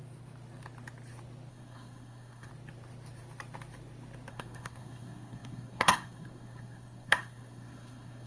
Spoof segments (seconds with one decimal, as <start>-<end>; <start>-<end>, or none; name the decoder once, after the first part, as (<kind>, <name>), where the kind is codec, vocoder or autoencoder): 1.5-2.5 (codec, SNAC); 4.3-8.3